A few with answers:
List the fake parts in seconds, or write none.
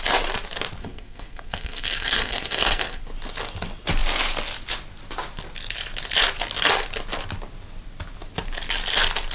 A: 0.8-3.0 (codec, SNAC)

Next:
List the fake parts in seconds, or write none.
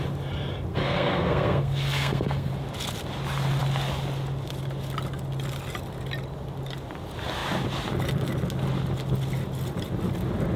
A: 0.7-2.5 (codec, SNAC)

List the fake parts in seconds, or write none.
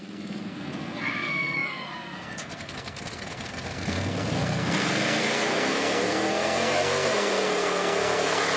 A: 0.0-8.6 (codec, SNAC)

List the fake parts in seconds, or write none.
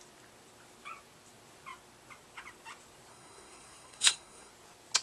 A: 3.1-4.5 (codec, SNAC)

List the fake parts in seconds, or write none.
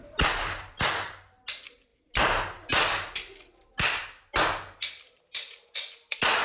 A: none